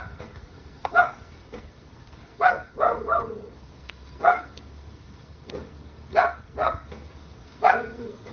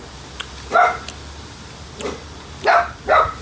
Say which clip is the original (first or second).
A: second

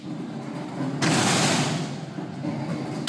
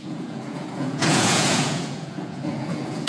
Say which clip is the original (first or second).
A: first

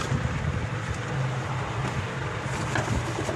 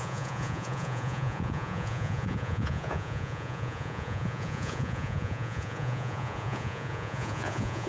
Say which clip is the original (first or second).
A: first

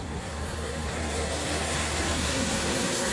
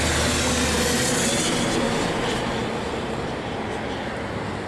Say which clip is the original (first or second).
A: second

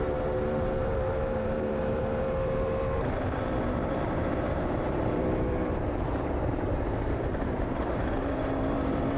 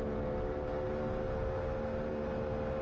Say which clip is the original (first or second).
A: second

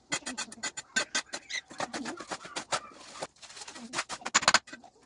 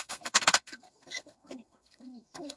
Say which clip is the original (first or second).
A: first